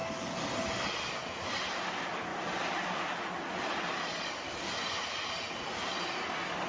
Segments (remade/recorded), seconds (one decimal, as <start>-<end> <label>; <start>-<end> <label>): 0.0-2.3 recorded; 2.3-3.0 remade; 3.0-6.7 recorded